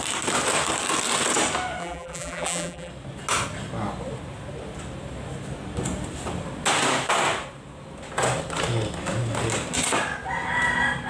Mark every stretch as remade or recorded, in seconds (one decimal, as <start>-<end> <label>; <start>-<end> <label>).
0.0-1.8 recorded; 1.8-2.9 remade; 2.9-11.1 recorded